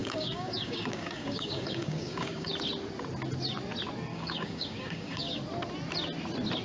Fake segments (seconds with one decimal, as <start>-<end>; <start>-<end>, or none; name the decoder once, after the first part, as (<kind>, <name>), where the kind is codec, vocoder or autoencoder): 0.0-2.5 (codec, DAC); 4.1-5.4